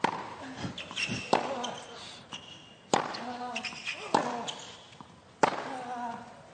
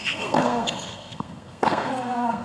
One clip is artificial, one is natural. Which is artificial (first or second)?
second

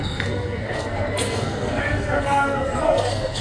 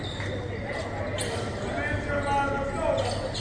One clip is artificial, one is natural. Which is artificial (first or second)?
first